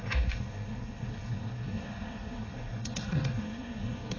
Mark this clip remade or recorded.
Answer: remade